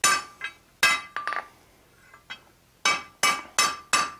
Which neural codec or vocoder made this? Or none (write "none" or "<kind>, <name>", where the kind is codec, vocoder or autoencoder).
none